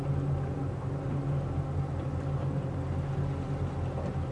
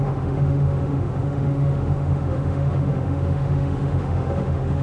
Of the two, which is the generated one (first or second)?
second